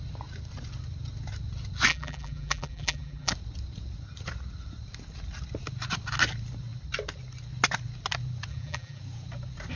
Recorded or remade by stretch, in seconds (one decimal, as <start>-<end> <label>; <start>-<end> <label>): 0.0-1.9 recorded; 1.9-3.3 remade; 3.3-8.5 recorded; 8.5-9.0 remade; 9.0-9.8 recorded